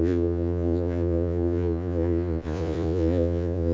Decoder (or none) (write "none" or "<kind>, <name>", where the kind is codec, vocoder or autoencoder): vocoder, Vocos